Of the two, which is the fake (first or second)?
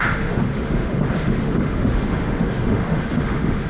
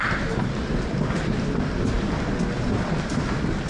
first